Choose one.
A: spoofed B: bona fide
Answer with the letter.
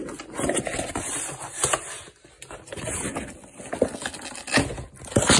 B